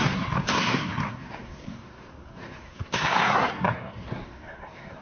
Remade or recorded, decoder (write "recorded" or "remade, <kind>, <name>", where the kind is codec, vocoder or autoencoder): remade, codec, SNAC